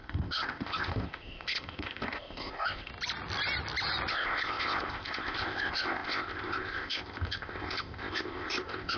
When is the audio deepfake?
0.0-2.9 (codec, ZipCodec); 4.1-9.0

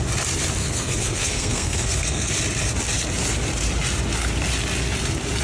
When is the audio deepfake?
0.6-2.3 (codec, SNAC)